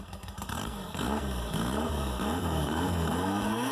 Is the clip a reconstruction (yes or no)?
yes